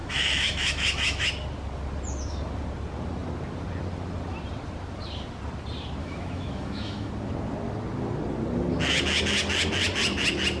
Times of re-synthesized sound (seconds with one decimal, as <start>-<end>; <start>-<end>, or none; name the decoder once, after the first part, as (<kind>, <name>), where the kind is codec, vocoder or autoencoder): 0.0-1.3 (autoencoder, DAC-VAE); 6.0-7.1